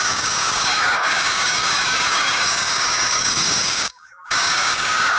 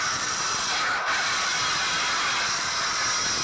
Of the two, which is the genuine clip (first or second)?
second